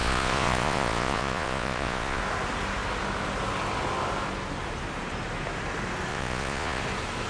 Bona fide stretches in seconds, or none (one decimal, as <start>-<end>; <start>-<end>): 2.2-6.1; 6.8-7.3